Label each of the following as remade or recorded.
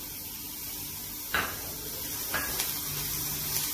recorded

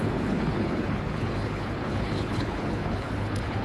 remade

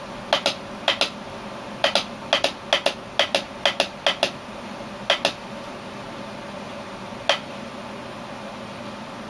recorded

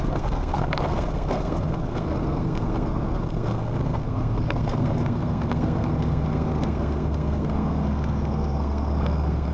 remade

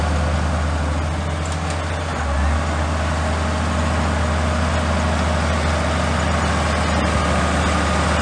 recorded